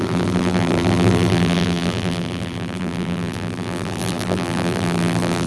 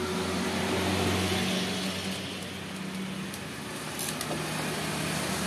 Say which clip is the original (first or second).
second